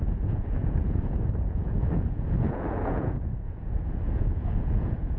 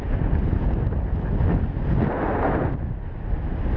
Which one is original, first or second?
second